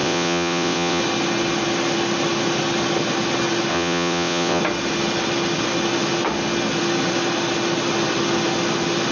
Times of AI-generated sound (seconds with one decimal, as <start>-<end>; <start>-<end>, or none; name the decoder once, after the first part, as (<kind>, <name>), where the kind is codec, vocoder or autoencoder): 0.0-1.0 (vocoder, WaveNeXt); 3.7-4.6